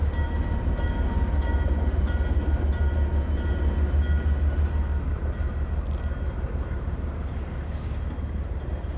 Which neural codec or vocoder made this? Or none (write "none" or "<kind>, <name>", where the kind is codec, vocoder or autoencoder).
none